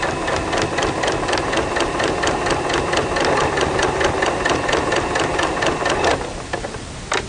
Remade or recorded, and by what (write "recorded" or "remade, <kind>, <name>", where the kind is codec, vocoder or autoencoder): recorded